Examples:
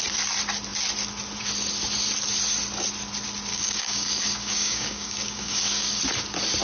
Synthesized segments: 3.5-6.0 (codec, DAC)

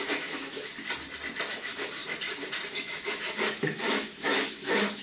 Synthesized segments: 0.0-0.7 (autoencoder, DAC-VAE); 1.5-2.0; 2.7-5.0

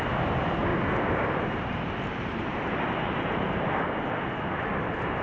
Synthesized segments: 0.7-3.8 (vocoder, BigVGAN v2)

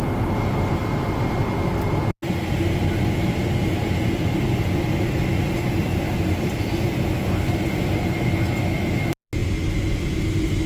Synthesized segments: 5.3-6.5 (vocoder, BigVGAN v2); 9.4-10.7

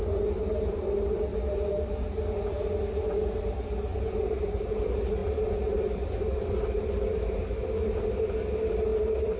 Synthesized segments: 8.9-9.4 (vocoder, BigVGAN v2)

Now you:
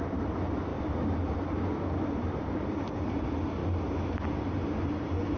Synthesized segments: 0.0-0.7 (vocoder, BigVGAN v2); 2.2-5.4